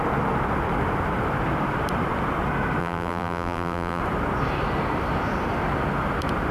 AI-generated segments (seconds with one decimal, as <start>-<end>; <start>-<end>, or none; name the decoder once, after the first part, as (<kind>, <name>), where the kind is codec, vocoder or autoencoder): 2.8-4.0 (vocoder, BigVGAN v2)